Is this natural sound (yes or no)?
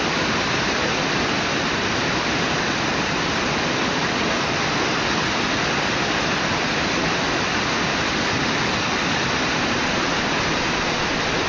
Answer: no